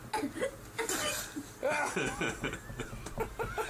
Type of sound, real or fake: real